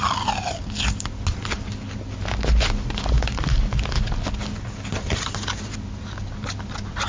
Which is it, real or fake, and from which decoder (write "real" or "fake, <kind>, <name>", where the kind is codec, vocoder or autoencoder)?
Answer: real